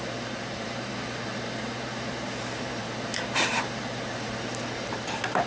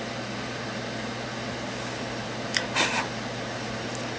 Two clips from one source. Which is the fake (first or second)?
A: first